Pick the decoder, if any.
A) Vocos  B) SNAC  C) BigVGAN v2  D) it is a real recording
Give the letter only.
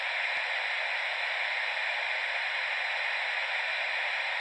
D